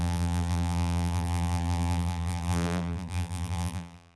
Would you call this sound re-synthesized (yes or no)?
yes